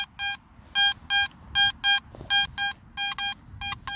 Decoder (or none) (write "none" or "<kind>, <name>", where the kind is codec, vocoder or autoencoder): none